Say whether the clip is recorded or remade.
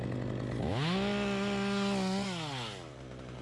recorded